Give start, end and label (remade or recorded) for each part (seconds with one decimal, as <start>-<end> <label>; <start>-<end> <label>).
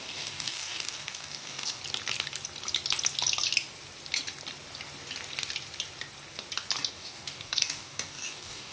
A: 0.0-1.8 remade; 1.8-6.9 recorded; 6.9-8.7 remade